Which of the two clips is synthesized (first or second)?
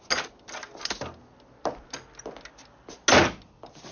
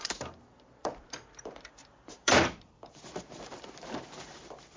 second